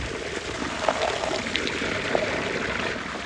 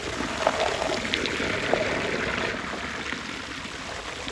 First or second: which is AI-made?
first